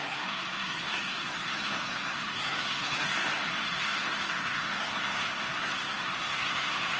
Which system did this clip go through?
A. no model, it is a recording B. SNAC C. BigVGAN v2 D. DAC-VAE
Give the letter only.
B